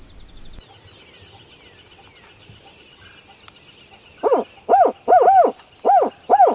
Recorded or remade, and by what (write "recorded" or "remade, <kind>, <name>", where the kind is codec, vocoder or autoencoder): recorded